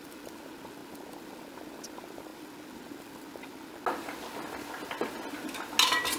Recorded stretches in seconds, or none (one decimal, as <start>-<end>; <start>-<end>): 0.0-6.2